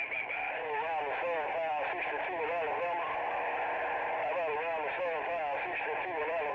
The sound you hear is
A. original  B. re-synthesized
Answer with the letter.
B